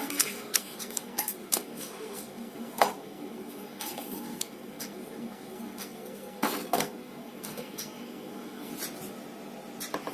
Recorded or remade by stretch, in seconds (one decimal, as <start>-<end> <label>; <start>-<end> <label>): 0.0-8.7 remade; 8.7-10.1 recorded